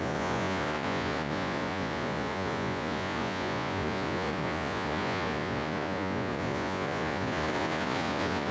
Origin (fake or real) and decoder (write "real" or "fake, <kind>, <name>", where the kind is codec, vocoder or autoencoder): fake, vocoder, Vocos